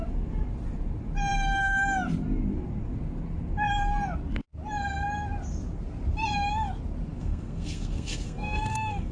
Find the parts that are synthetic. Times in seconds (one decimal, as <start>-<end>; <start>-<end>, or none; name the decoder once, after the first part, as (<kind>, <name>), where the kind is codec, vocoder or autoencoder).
7.2-9.1 (codec, SNAC)